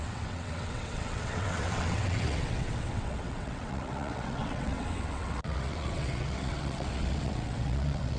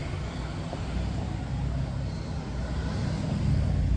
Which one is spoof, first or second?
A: first